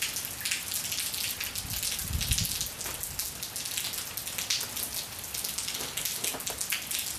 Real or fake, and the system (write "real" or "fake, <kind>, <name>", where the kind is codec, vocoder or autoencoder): real